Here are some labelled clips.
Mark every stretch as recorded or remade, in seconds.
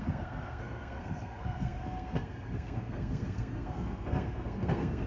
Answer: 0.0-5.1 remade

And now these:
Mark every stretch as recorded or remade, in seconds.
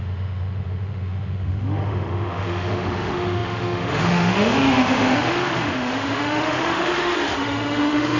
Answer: 0.0-8.2 remade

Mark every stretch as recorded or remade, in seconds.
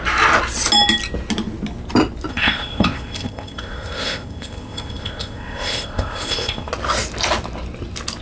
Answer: 0.0-2.3 recorded; 2.3-6.7 remade; 6.7-8.2 recorded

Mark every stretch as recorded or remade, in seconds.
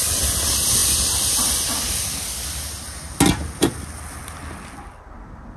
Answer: 0.0-5.6 recorded